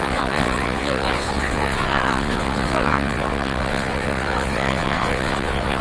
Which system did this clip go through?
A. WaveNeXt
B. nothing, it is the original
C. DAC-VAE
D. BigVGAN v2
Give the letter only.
A